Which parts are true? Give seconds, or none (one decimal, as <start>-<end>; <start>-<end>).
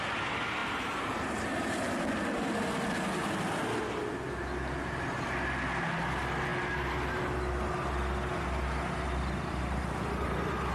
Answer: 0.0-0.6; 1.5-10.7